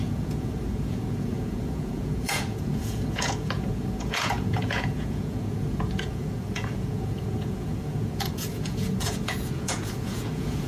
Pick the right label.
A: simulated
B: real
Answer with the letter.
A